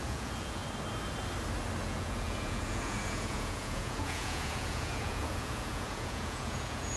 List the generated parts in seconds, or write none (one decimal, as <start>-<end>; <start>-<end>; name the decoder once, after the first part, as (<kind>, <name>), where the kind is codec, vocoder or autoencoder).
0.0-0.6 (vocoder, Vocos); 1.8-7.0